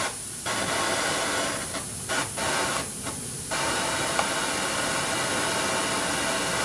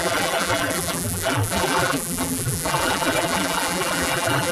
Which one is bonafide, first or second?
first